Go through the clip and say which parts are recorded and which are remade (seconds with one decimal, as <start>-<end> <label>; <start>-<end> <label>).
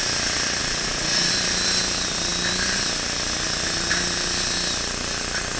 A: 0.0-0.6 recorded; 0.6-1.3 remade; 1.3-5.6 recorded